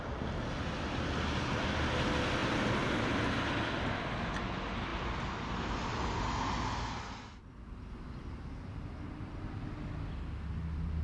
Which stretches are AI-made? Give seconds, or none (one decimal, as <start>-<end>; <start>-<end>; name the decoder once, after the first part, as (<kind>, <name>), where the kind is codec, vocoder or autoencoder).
none

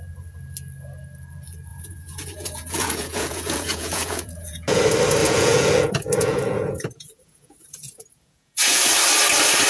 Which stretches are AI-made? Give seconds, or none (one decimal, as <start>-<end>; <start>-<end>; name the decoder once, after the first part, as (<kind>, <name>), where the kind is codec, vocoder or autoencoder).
1.7-4.8 (vocoder, Vocos); 5.2-8.8

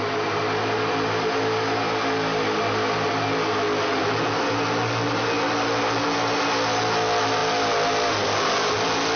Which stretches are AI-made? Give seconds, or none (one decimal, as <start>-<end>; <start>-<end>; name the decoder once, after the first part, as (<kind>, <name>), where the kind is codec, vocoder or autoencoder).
none

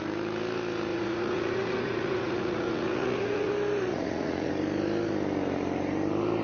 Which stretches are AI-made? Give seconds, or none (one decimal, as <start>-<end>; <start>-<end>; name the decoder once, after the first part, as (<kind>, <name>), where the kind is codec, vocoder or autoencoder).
0.9-3.5 (vocoder, Vocos); 3.9-4.5

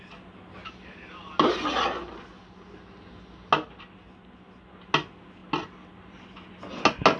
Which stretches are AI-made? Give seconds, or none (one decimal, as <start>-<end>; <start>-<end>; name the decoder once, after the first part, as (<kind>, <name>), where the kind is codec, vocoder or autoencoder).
none

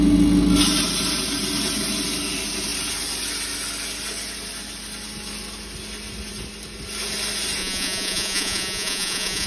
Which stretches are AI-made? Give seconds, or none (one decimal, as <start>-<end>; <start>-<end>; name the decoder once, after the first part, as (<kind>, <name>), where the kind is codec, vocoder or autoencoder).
7.6-9.5 (vocoder, Vocos)